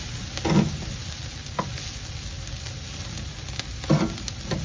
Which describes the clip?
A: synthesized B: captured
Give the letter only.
B